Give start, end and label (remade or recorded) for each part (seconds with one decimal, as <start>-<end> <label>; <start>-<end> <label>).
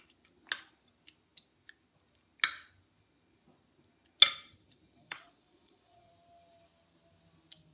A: 0.0-5.0 recorded; 5.0-6.1 remade; 6.1-7.7 recorded